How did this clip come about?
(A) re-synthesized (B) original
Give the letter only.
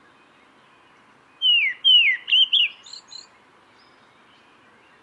B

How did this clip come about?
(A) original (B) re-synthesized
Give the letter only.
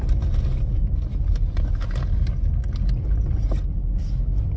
A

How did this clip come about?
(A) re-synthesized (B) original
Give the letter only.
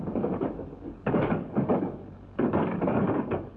A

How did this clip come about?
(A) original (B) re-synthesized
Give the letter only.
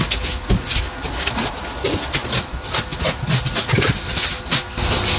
A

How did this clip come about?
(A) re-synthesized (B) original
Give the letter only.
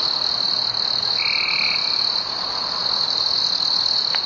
B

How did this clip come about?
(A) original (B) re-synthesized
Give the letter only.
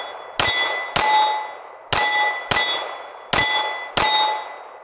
A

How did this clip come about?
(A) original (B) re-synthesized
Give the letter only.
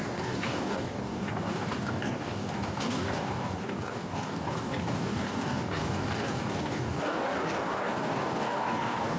B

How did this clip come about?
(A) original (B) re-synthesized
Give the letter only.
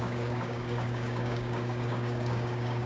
B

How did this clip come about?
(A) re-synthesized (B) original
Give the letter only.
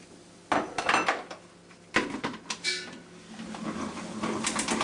B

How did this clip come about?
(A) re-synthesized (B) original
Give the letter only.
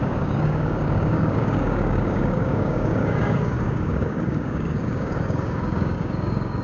A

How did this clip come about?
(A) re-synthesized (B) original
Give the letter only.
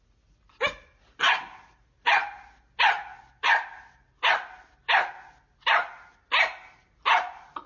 B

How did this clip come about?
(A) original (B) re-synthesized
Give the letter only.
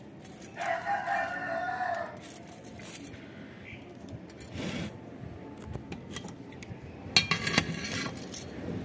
A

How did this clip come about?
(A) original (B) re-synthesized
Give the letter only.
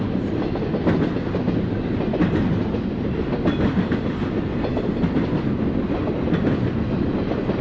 A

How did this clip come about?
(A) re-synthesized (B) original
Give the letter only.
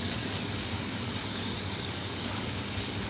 A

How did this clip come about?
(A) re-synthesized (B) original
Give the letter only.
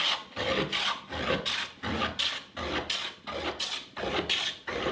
B